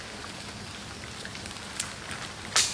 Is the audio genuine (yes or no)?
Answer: yes